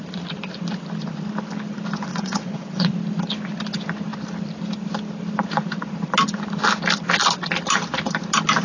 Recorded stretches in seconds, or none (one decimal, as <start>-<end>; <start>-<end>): 0.0-2.1; 2.9-8.6